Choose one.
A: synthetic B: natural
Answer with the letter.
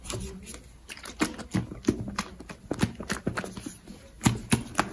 B